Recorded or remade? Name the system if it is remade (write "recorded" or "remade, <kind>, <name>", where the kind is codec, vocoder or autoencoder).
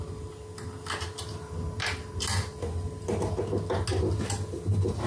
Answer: recorded